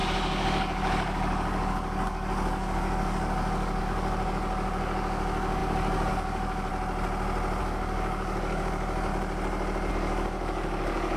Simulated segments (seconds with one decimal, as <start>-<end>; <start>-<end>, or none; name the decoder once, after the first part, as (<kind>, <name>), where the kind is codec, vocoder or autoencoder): 0.0-6.7 (codec, DAC); 7.6-9.1; 9.9-11.2